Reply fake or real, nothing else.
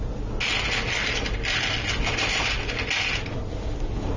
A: real